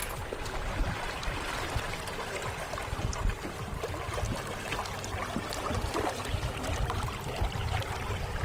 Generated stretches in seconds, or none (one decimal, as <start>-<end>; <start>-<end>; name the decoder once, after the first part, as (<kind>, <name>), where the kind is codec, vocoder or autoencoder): none